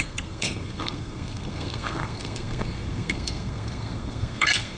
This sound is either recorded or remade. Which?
remade